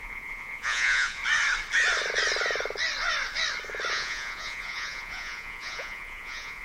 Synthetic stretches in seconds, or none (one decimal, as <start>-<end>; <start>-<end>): 0.0-1.2; 3.9-6.6